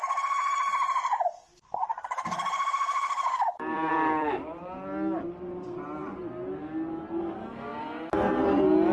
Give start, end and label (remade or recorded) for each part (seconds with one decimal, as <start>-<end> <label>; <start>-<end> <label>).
0.0-1.9 recorded; 1.9-6.1 remade; 6.1-8.9 recorded